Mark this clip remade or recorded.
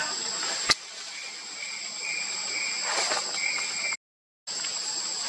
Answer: recorded